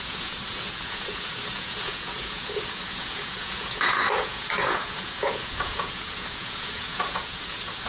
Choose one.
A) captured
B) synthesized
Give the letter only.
B